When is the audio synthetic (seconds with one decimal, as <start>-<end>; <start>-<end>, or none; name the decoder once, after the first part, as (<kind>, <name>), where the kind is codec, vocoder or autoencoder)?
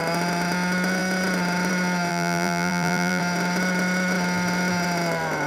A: 2.1-3.2 (vocoder, BigVGAN v2)